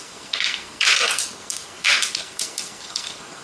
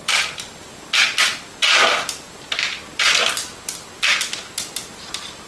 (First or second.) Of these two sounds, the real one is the second